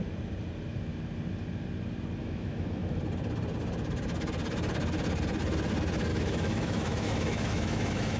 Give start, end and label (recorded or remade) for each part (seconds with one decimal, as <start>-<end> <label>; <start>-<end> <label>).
0.0-2.2 recorded; 2.2-3.0 remade; 3.0-6.1 recorded; 6.1-8.2 remade